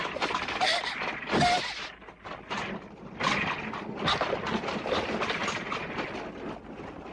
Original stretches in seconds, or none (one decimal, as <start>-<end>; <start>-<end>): 0.9-7.1